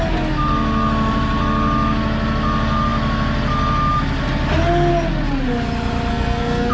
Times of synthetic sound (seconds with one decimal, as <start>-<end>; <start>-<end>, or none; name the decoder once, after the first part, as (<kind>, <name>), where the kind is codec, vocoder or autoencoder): 6.1-6.7 (codec, SNAC)

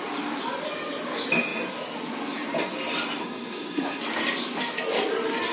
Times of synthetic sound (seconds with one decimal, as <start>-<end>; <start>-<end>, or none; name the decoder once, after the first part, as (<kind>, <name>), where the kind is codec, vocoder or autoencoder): 3.2-4.0 (codec, SNAC)